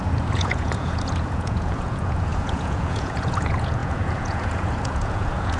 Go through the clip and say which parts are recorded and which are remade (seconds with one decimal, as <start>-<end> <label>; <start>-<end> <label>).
0.0-5.6 remade